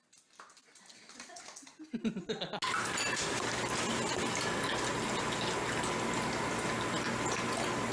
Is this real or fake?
real